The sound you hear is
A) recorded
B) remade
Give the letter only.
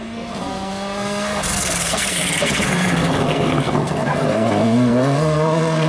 B